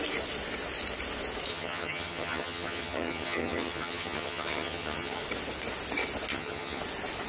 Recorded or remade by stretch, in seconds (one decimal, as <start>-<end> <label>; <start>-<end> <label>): 0.0-1.5 recorded; 1.5-5.2 remade; 5.2-6.3 recorded; 6.3-6.8 remade; 6.8-7.3 recorded